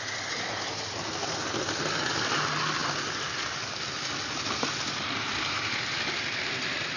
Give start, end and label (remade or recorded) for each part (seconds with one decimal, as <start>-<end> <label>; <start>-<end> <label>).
0.0-7.0 recorded